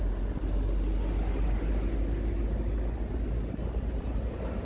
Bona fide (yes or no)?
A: yes